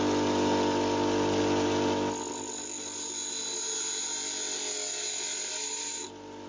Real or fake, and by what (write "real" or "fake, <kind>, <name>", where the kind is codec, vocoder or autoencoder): real